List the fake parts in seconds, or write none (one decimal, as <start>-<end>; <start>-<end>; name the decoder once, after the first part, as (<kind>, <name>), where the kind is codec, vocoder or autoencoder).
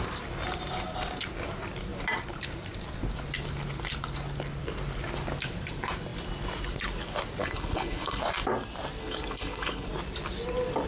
7.4-8.2 (codec, HILCodec); 9.0-9.9